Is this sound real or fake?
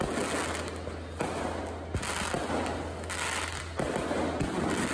real